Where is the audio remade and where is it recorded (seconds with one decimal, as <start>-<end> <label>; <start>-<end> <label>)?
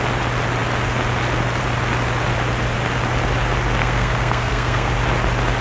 0.0-3.8 recorded; 3.8-4.9 remade; 4.9-5.6 recorded